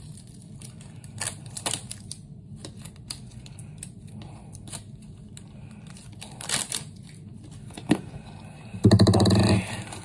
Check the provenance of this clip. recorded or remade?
recorded